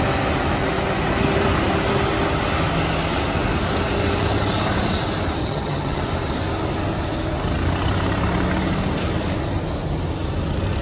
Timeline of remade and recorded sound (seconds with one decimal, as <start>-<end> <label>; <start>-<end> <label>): 0.0-5.4 recorded; 5.4-6.0 remade; 6.0-10.8 recorded